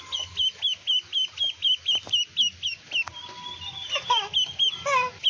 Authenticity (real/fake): real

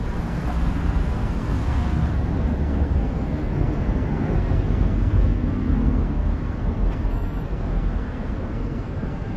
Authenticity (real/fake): fake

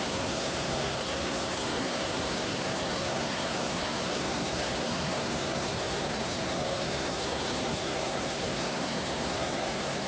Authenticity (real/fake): fake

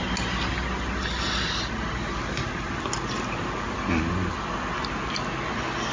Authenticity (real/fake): real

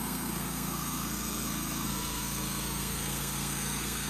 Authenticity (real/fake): fake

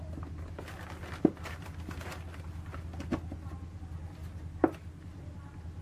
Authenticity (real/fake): real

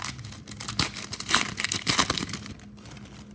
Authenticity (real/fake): real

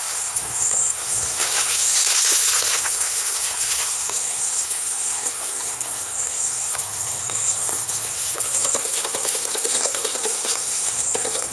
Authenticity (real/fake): fake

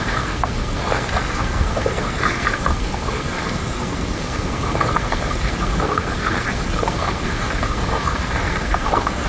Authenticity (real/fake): fake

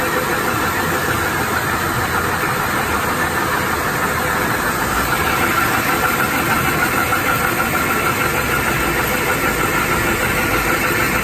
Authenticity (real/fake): real